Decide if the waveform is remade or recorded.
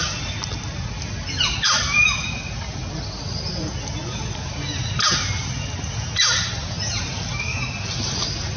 recorded